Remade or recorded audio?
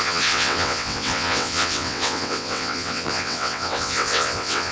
remade